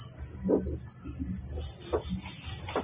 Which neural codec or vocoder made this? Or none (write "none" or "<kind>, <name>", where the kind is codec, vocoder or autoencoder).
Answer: none